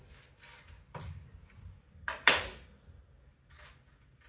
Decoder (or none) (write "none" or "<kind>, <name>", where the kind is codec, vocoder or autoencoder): none